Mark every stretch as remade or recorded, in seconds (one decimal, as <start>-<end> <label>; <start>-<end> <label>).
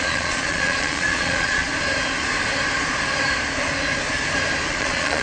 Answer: 0.0-1.6 remade; 1.6-4.7 recorded; 4.7-5.2 remade